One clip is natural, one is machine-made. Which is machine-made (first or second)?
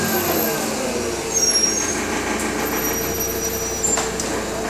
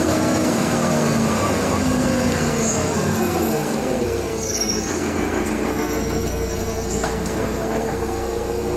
second